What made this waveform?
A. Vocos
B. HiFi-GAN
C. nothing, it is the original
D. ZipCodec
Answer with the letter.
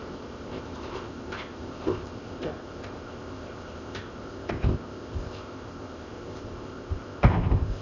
D